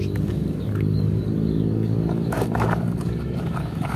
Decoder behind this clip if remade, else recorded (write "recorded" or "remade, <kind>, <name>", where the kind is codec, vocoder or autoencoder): remade, codec, DAC